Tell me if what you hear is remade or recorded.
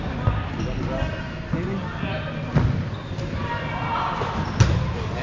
recorded